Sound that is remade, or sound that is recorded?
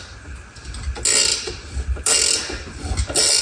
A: recorded